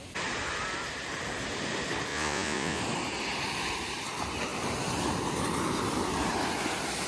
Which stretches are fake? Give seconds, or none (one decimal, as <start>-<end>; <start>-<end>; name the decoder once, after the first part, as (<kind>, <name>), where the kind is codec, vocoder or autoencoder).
2.1-2.8 (vocoder, Vocos)